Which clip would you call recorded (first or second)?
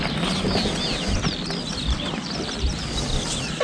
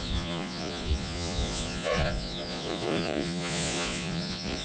first